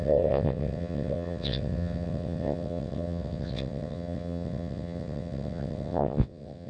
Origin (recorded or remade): remade